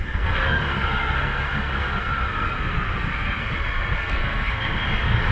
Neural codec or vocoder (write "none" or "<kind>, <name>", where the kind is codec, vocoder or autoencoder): codec, SNAC